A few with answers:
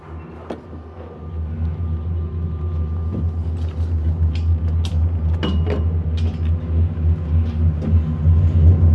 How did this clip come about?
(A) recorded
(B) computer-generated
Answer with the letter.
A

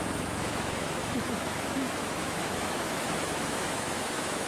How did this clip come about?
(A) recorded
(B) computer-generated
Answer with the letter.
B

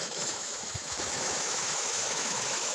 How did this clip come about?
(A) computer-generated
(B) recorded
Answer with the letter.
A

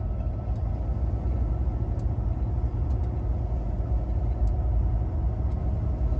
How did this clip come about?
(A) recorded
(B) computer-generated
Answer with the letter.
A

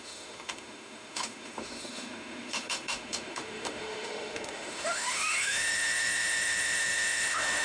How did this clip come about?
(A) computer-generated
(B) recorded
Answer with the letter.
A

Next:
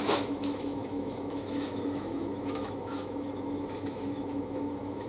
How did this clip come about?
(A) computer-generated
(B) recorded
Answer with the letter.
A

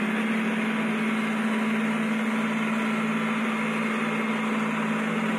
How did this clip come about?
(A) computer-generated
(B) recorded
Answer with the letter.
B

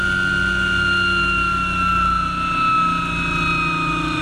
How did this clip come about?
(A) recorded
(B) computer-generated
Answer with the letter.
A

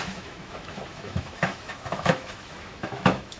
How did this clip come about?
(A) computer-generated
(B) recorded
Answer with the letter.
A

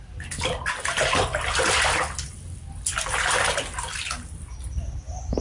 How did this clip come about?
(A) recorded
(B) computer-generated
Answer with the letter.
A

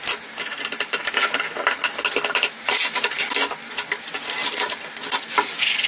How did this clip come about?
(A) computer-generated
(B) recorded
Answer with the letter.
B